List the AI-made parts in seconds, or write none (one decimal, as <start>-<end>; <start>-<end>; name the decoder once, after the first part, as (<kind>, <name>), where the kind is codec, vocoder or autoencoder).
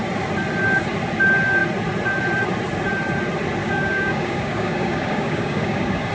3.6-6.1 (codec, DAC)